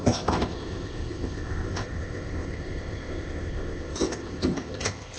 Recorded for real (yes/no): no